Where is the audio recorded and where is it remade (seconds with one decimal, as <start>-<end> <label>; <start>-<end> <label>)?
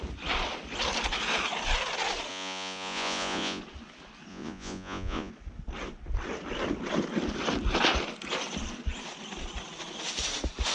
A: 0.0-2.3 recorded; 2.3-3.6 remade; 3.6-4.3 recorded; 4.3-5.3 remade; 5.3-10.7 recorded